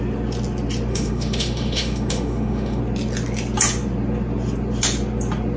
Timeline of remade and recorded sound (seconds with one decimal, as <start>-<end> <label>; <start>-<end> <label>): 0.0-0.9 recorded; 0.9-2.8 remade; 2.8-5.6 recorded